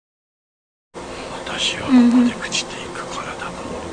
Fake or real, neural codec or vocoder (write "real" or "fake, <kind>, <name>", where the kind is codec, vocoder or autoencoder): real